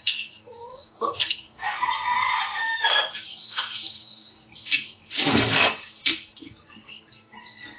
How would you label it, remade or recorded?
remade